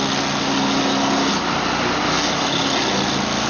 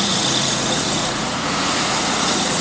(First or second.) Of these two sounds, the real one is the first